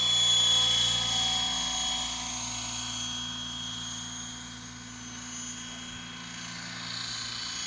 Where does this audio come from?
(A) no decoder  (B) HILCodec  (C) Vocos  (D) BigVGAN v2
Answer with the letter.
A